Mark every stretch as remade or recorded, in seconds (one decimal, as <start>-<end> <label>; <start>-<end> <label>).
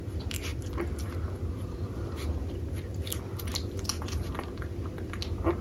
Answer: 0.0-5.6 recorded